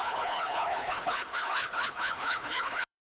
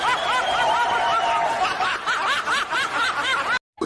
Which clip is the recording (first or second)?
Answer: second